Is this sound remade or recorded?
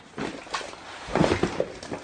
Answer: recorded